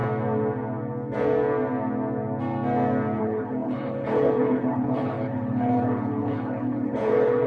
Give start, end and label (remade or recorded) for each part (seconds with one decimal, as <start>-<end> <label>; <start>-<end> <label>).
0.0-3.2 recorded; 3.2-7.5 remade